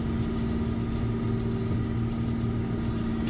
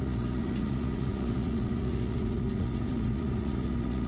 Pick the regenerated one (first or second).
second